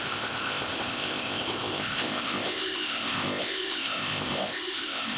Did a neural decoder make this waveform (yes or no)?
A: yes